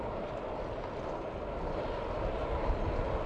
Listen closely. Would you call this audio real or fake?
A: real